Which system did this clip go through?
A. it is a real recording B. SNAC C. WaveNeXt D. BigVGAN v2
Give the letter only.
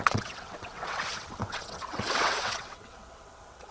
C